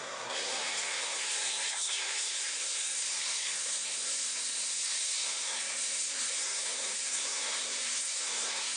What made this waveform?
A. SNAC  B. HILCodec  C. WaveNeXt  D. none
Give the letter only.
A